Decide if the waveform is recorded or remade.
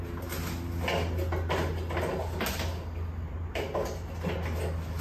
recorded